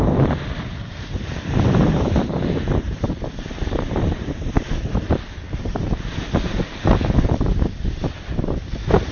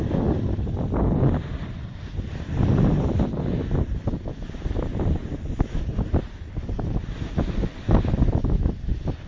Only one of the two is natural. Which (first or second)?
second